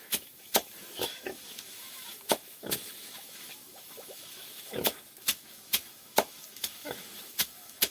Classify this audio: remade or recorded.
remade